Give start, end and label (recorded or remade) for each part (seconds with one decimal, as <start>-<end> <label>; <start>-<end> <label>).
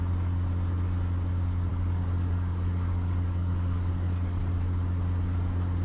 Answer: 0.0-1.7 recorded; 1.7-4.4 remade; 4.4-5.8 recorded